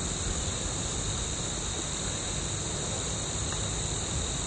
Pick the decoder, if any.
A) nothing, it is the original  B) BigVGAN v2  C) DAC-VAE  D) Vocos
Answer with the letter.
A